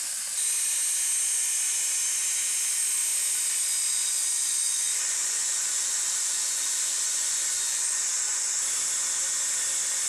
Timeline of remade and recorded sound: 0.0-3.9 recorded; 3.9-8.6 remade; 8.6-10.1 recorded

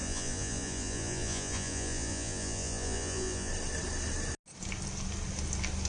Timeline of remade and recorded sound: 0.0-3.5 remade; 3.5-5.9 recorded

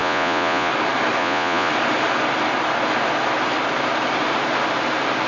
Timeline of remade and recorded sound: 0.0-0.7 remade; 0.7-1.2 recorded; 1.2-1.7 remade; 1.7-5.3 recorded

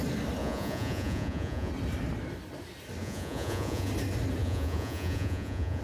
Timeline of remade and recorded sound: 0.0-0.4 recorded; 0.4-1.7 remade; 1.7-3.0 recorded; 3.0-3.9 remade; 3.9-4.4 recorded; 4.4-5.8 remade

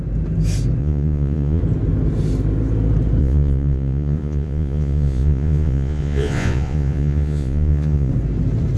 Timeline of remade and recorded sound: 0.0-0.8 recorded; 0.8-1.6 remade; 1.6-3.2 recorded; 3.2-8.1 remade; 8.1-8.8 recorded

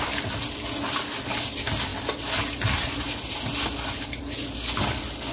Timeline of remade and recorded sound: 0.0-5.3 recorded

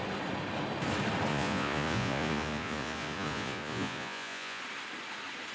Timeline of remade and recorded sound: 0.0-1.3 recorded; 1.3-4.6 remade; 4.6-5.5 recorded